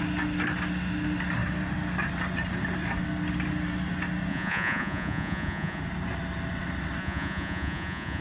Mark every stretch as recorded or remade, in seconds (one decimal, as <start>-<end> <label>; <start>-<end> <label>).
0.0-4.3 recorded; 4.3-5.8 remade; 5.8-7.0 recorded; 7.0-8.2 remade